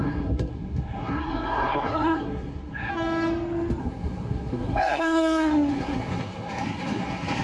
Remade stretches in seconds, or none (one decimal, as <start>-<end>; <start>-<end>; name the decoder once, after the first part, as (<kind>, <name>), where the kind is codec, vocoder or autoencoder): 0.0-2.9 (codec, SNAC); 3.8-7.4